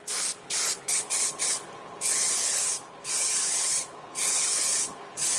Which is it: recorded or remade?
remade